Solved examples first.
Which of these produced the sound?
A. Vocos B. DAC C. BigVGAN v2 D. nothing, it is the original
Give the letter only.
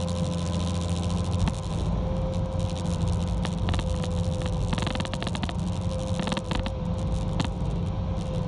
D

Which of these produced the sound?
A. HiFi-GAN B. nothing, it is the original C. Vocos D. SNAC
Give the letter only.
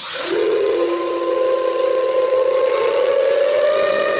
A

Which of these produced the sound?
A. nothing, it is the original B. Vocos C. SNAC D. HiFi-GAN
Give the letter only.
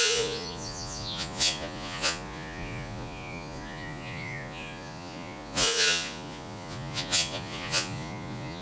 B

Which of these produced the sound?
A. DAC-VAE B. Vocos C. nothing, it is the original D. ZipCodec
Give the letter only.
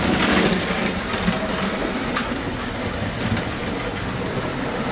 C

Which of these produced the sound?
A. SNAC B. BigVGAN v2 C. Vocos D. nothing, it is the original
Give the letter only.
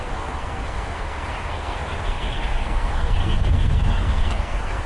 A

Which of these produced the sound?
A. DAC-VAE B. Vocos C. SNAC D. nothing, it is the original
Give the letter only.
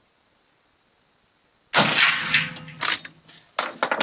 D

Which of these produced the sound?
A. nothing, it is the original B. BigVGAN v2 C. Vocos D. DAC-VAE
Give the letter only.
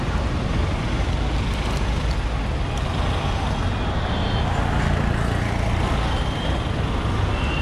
A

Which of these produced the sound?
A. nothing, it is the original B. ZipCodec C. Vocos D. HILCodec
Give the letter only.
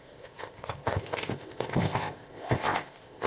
B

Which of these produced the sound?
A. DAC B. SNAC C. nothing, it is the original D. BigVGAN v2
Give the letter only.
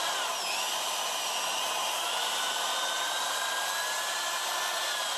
C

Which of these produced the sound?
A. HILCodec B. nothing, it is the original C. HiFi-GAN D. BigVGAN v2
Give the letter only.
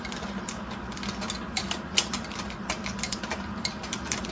B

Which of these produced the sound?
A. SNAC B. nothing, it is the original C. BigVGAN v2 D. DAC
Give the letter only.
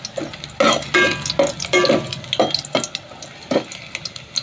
B